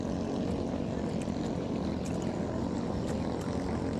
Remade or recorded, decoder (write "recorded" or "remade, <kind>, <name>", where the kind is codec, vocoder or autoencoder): recorded